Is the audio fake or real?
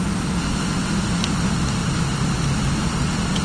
real